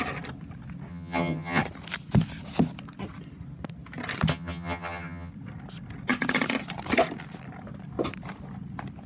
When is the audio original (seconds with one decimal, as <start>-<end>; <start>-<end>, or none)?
0.0-0.9; 1.6-4.3; 5.3-9.1